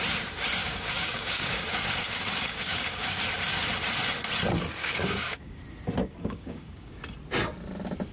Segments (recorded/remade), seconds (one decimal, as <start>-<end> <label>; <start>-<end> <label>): 0.0-0.6 recorded; 0.6-3.2 remade; 3.2-4.8 recorded; 4.8-5.6 remade; 5.6-6.0 recorded; 6.0-7.0 remade; 7.0-8.1 recorded